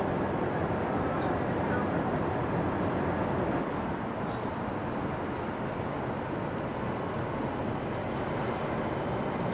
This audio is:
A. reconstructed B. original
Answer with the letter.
B